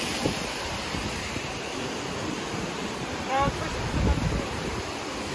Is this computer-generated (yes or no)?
yes